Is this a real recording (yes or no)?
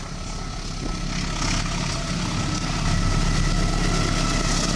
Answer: yes